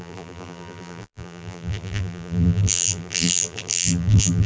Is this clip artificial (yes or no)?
yes